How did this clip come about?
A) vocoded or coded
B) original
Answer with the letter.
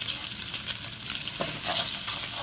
B